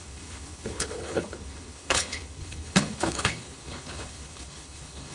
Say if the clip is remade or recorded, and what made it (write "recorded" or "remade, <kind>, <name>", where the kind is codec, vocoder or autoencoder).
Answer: remade, codec, HILCodec